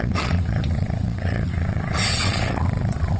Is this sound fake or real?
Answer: fake